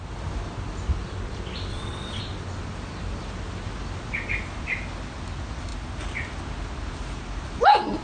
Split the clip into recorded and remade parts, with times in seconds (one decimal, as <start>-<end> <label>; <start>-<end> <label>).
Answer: 0.0-1.7 recorded; 1.7-2.2 remade; 2.2-8.0 recorded